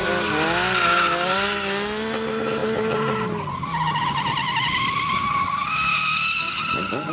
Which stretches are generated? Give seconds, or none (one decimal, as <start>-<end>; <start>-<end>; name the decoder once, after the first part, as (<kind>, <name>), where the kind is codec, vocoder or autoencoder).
none